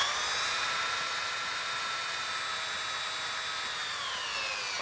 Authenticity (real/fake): real